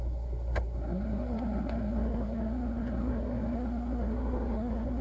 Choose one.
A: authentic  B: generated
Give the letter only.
B